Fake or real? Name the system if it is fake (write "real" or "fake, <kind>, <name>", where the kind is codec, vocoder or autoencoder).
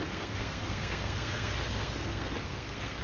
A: fake, codec, SNAC